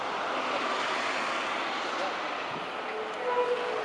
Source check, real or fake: real